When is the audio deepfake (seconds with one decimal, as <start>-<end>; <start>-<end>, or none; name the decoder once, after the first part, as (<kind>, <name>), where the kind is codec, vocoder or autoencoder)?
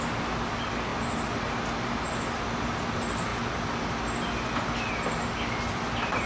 none